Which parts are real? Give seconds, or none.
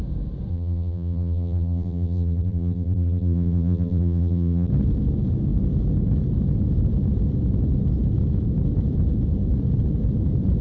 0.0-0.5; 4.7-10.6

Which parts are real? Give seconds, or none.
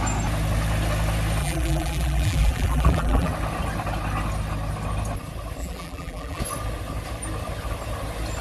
0.0-1.4; 3.3-5.6; 6.4-8.4